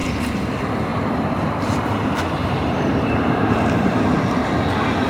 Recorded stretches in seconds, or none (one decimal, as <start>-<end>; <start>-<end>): 0.5-0.9; 4.0-5.1